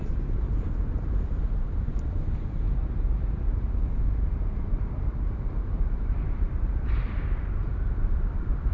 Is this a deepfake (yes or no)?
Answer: yes